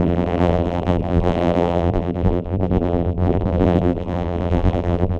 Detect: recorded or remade remade